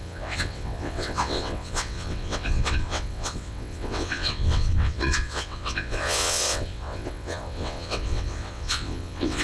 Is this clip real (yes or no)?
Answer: no